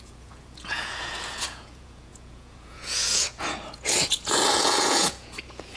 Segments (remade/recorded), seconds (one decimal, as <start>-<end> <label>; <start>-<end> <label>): 0.0-5.8 remade